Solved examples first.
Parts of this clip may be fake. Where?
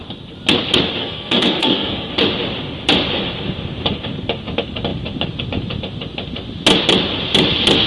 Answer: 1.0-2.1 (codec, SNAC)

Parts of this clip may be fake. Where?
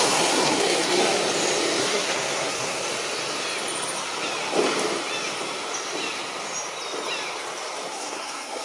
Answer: 0.0-1.0 (codec, SNAC); 1.8-2.8; 7.9-8.6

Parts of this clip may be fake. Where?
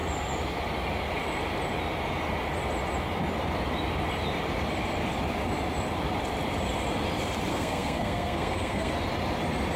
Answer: 7.5-8.9 (codec, SNAC)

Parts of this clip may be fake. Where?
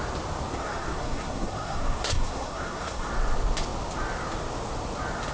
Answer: 0.6-3.1 (codec, SNAC)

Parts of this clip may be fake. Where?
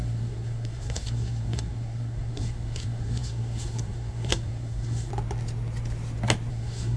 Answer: 0.0-5.1 (codec, SNAC); 6.5-7.0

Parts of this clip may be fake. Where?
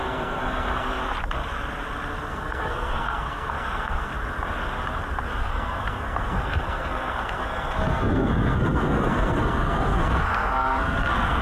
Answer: 0.0-1.0 (codec, SNAC); 2.3-4.1; 5.4-11.4